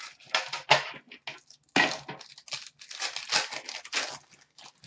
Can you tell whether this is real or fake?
real